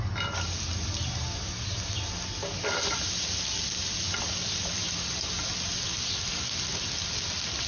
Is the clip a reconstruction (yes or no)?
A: no